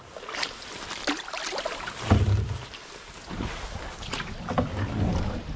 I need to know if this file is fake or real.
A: real